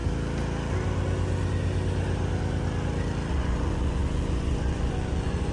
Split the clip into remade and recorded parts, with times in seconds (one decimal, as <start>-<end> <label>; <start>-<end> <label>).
0.0-3.3 recorded; 3.3-5.5 remade